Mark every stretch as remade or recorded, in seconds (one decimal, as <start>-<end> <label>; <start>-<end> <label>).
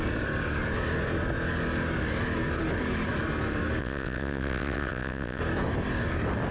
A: 0.0-3.8 recorded; 3.8-5.4 remade; 5.4-6.5 recorded